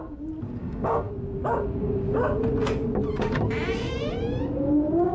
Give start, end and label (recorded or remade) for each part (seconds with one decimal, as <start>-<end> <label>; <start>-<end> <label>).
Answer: 0.0-0.6 recorded; 0.6-1.1 remade; 1.1-5.1 recorded